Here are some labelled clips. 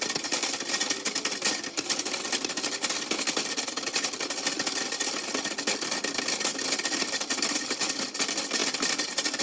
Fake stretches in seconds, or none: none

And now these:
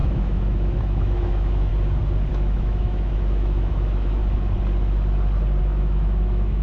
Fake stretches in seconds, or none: 0.0-1.7 (autoencoder, DAC-VAE); 2.3-4.2; 5.6-6.6

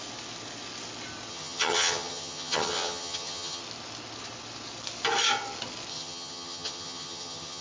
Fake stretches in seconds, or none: 1.3-3.6 (vocoder, HiFi-GAN); 5.9-7.6

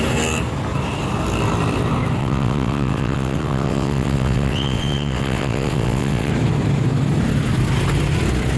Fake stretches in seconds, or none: 2.2-6.3 (vocoder, WaveNeXt)

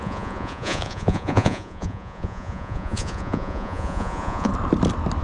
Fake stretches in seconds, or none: 0.0-4.5 (vocoder, Vocos)

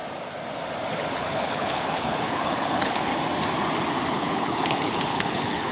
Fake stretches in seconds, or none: 1.1-3.1 (codec, HILCodec); 4.1-5.7

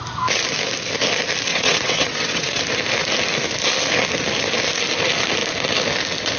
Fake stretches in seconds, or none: 1.5-2.6 (vocoder, WaveNeXt)